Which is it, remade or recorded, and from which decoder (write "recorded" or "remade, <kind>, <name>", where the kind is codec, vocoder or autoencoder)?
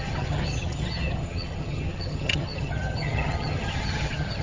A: remade, vocoder, HiFi-GAN